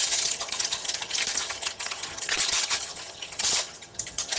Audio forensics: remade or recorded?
remade